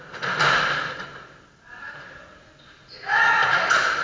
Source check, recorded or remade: recorded